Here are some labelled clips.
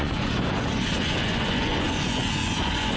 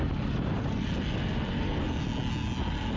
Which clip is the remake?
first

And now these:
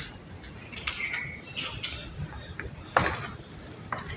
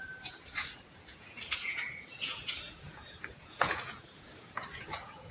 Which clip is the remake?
second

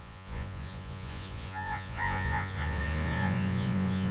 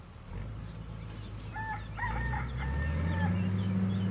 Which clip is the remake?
first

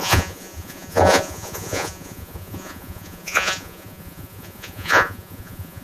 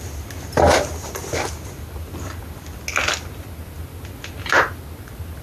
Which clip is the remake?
first